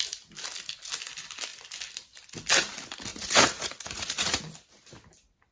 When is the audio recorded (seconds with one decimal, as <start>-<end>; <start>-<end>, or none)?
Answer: 0.0-3.1; 4.4-5.5